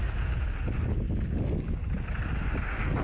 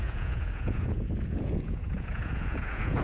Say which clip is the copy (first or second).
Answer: second